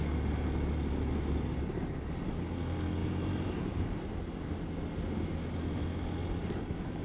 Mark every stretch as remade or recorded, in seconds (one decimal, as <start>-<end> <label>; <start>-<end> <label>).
0.0-3.0 recorded; 3.0-4.1 remade; 4.1-7.0 recorded